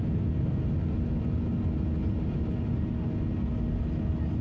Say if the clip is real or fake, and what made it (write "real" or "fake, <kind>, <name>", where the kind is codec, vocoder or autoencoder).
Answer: real